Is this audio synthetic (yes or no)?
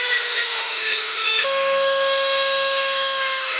yes